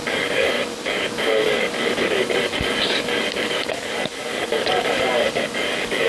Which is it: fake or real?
fake